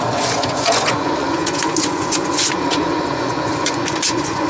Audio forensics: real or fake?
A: fake